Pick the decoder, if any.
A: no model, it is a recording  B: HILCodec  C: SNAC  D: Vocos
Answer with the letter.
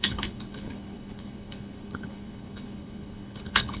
B